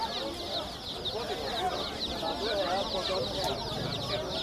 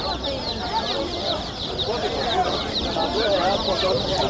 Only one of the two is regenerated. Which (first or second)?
second